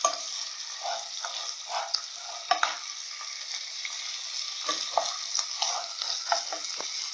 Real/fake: real